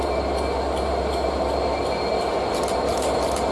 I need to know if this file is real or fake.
real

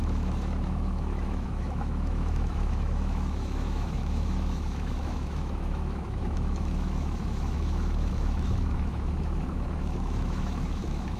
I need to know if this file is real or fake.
fake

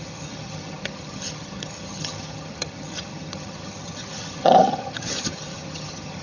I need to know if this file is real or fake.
fake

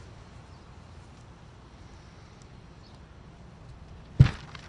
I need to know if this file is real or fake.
real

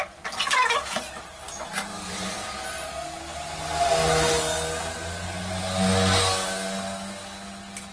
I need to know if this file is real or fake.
real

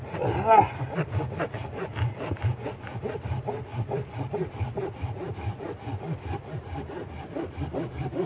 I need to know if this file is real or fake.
real